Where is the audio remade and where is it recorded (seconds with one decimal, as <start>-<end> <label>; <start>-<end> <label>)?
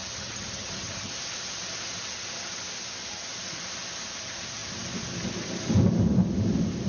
0.0-1.1 remade; 1.1-6.9 recorded